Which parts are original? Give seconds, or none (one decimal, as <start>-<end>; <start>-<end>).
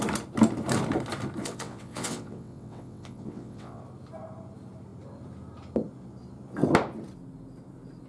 0.0-1.4; 3.8-8.1